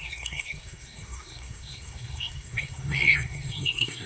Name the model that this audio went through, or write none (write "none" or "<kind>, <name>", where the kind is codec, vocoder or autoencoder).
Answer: codec, SNAC